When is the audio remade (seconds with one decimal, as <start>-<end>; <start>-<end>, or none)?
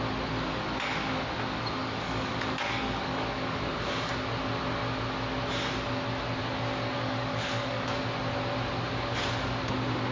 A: 1.8-4.1; 6.4-8.0